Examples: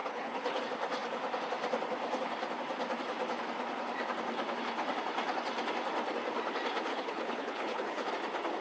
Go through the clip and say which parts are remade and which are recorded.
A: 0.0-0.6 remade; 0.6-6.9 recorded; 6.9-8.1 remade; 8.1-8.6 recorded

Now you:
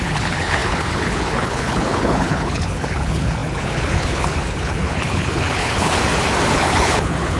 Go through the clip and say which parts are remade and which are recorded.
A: 0.0-6.0 remade; 6.0-6.5 recorded; 6.5-7.4 remade

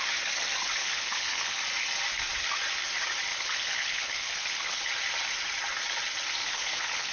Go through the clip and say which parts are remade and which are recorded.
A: 0.0-0.8 recorded; 0.8-1.6 remade; 1.6-3.3 recorded; 3.3-4.8 remade; 4.8-6.4 recorded; 6.4-7.1 remade

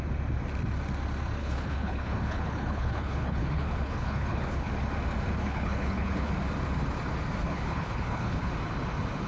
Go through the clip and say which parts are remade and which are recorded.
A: 0.0-1.4 recorded; 1.4-4.7 remade; 4.7-5.4 recorded; 5.4-6.3 remade; 6.3-7.4 recorded; 7.4-8.5 remade; 8.5-9.3 recorded

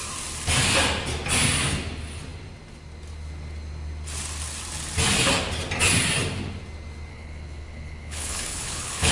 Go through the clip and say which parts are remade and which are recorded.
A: 0.0-7.1 recorded; 7.1-9.1 remade

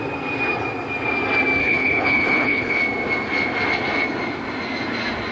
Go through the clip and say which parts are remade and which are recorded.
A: 0.0-1.6 recorded; 1.6-2.8 remade; 2.8-5.3 recorded

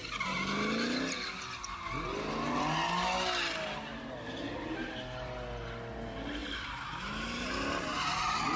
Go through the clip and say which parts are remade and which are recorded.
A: 0.0-8.6 recorded